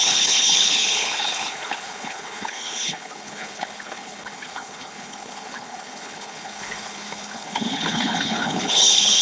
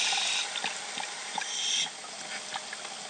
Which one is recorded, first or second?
second